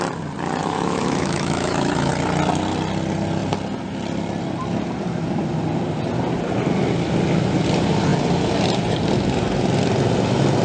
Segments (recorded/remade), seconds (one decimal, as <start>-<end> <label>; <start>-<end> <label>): 0.0-0.6 recorded; 0.6-2.1 remade; 2.1-10.6 recorded